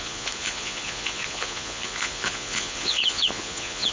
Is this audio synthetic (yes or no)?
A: yes